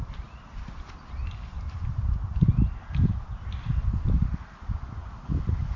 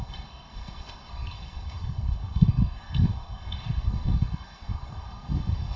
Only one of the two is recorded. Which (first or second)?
first